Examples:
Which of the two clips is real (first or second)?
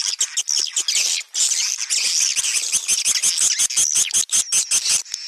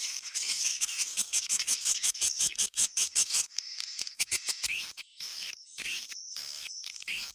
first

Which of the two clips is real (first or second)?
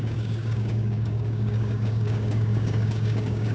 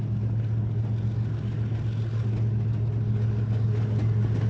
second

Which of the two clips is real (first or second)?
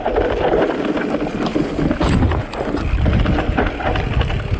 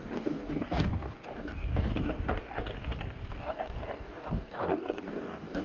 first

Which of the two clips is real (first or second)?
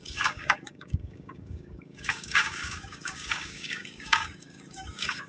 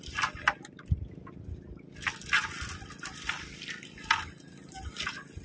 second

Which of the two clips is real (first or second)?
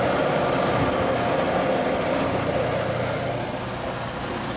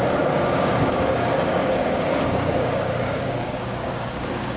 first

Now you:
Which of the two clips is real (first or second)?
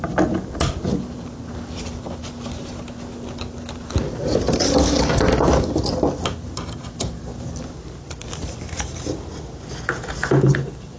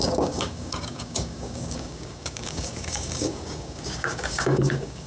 first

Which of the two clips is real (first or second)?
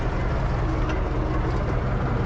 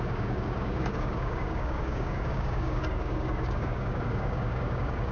first